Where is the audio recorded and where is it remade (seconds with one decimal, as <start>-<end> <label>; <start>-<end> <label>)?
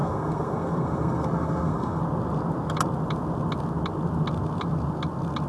0.0-2.0 remade; 2.0-5.5 recorded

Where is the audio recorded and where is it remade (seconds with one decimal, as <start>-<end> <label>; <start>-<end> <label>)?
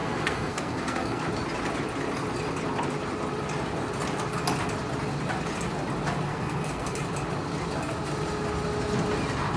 0.0-1.2 remade; 1.2-6.3 recorded; 6.3-7.0 remade; 7.0-9.6 recorded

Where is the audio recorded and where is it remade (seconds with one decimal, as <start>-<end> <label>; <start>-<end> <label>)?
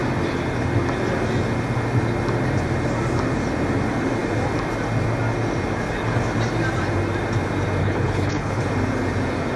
0.0-7.8 recorded; 7.8-8.6 remade; 8.6-9.6 recorded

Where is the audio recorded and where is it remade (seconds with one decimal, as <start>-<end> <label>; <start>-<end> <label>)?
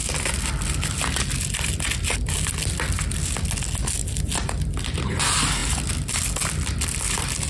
0.0-7.5 recorded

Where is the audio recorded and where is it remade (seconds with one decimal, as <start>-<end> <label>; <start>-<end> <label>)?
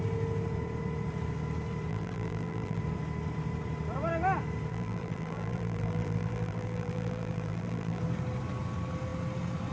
0.0-1.9 recorded; 1.9-2.8 remade; 2.8-4.7 recorded; 4.7-8.0 remade; 8.0-9.7 recorded